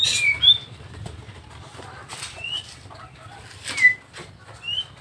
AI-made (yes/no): no